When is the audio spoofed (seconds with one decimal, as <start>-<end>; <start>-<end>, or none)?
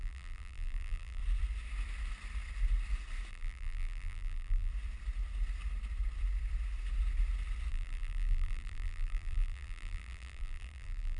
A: 0.0-1.2; 3.3-4.7; 7.7-11.2